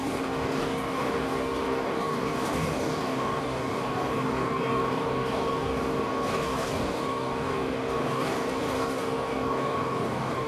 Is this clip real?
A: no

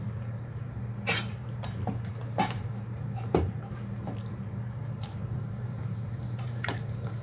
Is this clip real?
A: no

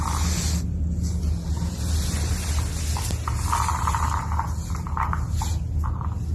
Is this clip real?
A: yes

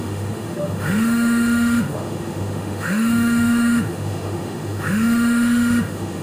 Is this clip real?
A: no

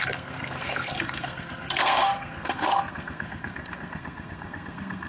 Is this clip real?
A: no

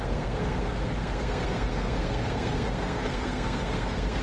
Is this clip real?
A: no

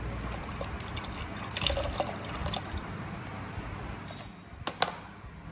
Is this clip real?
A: yes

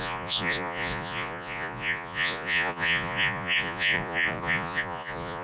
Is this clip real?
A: no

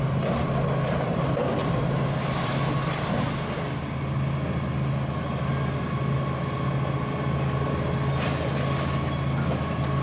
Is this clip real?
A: yes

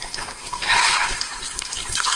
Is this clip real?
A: no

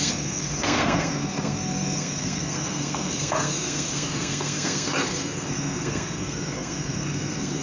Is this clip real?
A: no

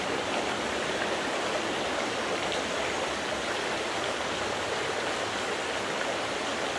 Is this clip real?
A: yes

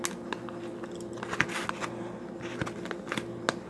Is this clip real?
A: yes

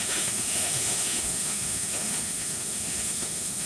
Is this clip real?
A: no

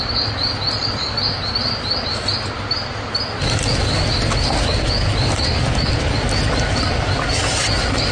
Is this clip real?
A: yes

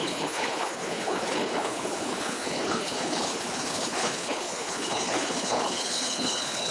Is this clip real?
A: no